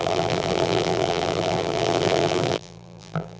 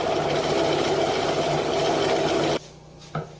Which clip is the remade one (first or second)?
first